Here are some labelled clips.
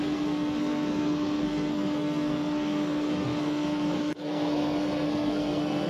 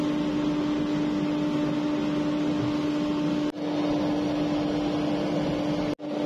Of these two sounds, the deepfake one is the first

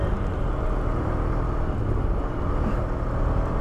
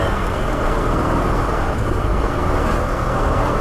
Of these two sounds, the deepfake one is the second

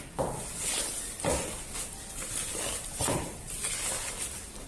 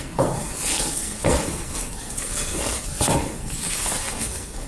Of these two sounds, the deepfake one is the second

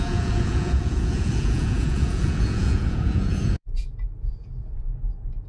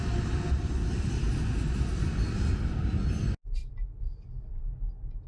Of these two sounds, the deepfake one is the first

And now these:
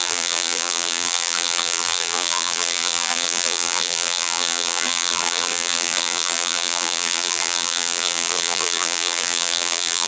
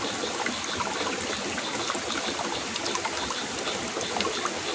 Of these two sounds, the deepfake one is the first